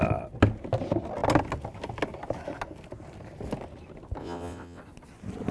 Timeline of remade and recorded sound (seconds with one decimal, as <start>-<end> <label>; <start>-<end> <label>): 0.0-4.2 recorded; 4.2-4.8 remade; 4.8-5.5 recorded